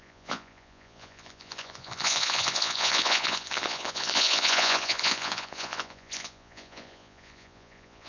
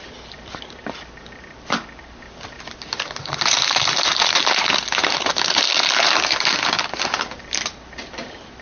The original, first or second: second